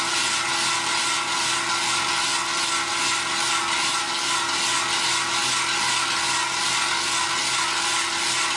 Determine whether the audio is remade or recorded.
recorded